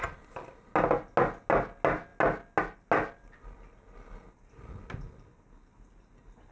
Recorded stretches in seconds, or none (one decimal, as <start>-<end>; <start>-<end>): 0.0-6.5